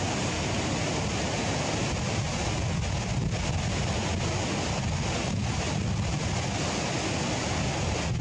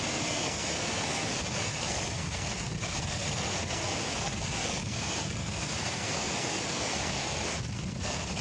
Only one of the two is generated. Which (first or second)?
second